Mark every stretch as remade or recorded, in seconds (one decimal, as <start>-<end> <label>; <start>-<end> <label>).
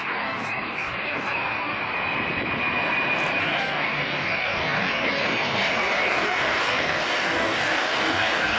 0.0-1.8 remade; 1.8-3.4 recorded; 3.4-8.6 remade